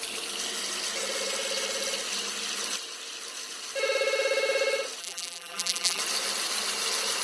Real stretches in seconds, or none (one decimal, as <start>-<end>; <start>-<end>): 0.0-5.0; 6.0-7.2